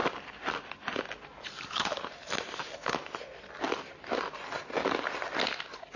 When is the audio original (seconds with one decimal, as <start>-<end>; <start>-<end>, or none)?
3.6-6.0